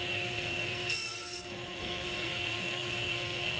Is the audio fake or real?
fake